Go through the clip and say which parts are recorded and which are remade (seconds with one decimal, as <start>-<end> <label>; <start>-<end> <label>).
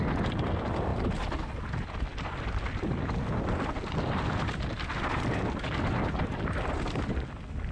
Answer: 0.0-7.7 recorded